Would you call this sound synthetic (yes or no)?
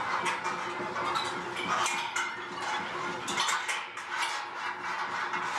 no